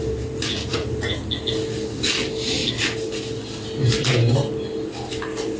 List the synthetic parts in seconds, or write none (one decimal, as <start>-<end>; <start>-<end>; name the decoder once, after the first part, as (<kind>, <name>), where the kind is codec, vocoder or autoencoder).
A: 0.5-1.1 (vocoder, BigVGAN v2)

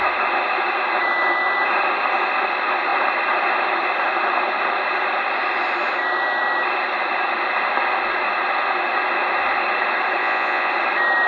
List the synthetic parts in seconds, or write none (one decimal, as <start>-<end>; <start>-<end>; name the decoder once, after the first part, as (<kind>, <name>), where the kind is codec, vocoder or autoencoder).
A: 10.2-10.7 (vocoder, Vocos)

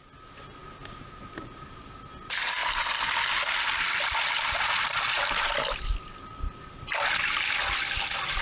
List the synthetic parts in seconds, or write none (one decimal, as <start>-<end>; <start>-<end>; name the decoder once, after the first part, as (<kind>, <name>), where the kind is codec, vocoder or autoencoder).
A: none

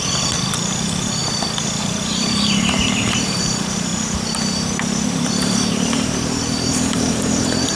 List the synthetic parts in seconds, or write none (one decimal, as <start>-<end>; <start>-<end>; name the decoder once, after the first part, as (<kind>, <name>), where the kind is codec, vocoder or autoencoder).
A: 0.0-1.2 (vocoder, BigVGAN v2); 1.8-3.9; 4.5-7.8

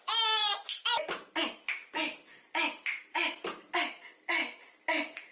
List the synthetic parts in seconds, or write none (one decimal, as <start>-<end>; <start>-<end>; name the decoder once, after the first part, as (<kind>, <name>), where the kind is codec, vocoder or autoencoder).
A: none